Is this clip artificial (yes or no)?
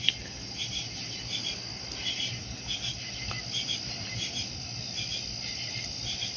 no